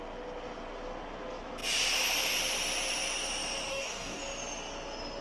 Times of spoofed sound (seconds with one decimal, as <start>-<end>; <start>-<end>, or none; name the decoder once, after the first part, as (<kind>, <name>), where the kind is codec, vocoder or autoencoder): 3.7-4.2 (codec, DAC)

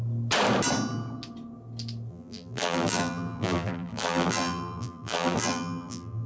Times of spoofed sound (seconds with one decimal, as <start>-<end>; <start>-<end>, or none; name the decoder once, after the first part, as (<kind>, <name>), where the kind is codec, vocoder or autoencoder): 2.1-6.3 (vocoder, BigVGAN v2)

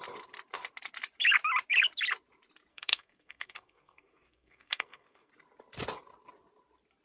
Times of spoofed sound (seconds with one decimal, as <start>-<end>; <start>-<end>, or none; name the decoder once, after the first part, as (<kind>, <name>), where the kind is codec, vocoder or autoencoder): 2.7-5.3 (codec, SNAC)

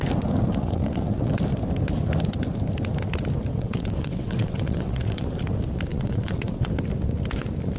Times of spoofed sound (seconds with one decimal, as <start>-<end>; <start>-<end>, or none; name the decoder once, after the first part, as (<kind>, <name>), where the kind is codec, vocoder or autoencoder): 0.5-1.3 (vocoder, WaveNeXt); 3.5-5.4; 5.9-6.7

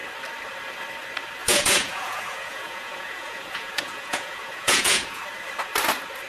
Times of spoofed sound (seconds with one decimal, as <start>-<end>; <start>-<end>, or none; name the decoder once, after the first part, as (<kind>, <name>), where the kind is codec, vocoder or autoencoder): 1.4-5.2 (vocoder, Vocos)

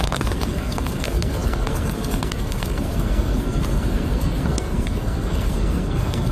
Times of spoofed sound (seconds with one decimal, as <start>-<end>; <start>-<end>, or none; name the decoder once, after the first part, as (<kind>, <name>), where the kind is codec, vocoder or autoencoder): 0.0-6.3 (codec, SNAC)

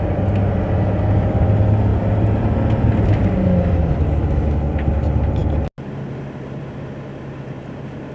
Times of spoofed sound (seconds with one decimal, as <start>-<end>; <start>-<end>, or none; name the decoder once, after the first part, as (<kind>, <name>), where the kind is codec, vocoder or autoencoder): none